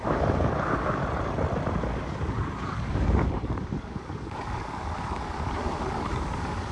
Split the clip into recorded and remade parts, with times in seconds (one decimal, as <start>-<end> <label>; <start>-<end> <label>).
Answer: 0.0-1.0 remade; 1.0-1.8 recorded; 1.8-6.7 remade